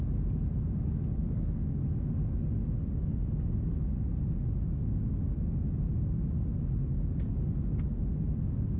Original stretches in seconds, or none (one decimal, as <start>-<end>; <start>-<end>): 0.0-1.1; 1.6-8.8